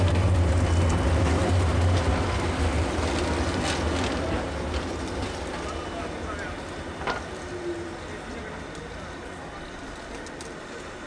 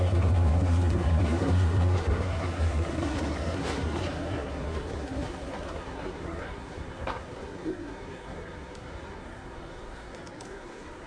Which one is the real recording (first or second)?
first